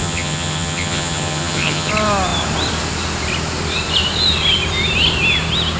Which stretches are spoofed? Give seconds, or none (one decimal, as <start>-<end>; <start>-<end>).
0.0-1.9